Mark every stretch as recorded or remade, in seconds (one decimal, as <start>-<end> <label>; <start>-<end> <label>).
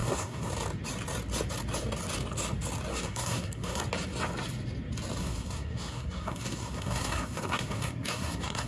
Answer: 0.0-0.5 remade; 0.5-2.9 recorded; 2.9-3.8 remade; 3.8-5.2 recorded; 5.2-8.7 remade